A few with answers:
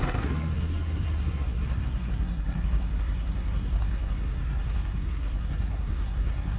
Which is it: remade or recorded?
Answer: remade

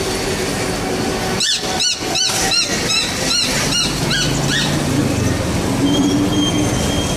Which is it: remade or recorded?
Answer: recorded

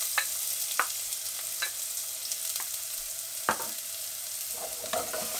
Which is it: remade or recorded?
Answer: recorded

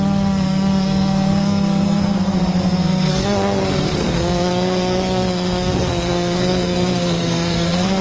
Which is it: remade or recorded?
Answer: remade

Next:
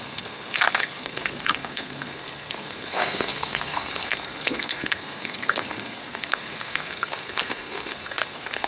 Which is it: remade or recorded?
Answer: remade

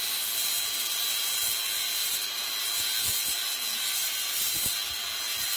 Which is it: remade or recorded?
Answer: recorded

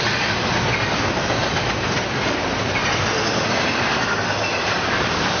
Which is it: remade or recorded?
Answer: recorded